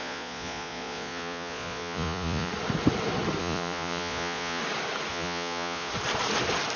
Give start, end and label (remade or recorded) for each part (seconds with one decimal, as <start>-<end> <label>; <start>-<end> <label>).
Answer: 0.0-2.5 remade; 2.5-3.4 recorded; 3.4-4.6 remade; 4.6-5.1 recorded; 5.1-5.9 remade; 5.9-6.8 recorded